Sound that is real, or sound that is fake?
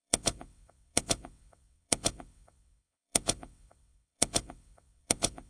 fake